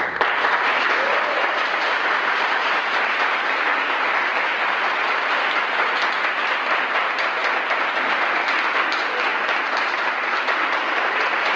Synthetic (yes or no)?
no